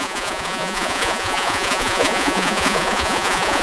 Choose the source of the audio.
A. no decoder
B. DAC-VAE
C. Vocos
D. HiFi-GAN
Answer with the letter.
C